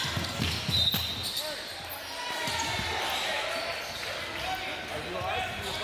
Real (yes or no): yes